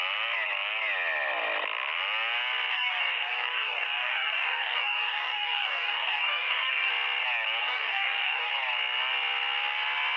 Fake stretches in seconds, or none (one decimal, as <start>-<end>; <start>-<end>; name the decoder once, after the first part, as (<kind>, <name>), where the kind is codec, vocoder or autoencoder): 2.7-6.9 (codec, DAC); 7.6-8.5